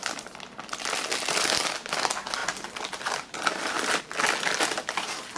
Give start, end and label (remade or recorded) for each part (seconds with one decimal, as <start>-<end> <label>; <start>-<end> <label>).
0.0-5.4 recorded